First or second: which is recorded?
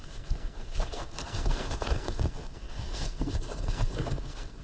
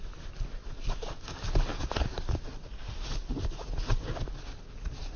second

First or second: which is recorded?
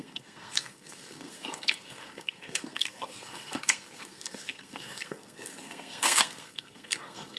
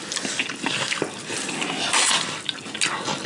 second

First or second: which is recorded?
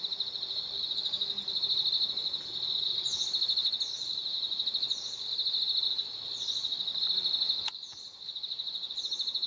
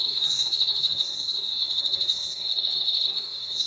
first